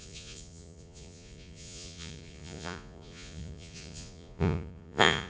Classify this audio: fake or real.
fake